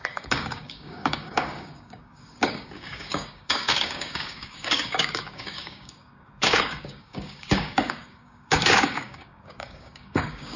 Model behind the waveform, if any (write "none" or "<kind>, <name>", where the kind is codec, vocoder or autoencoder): codec, DAC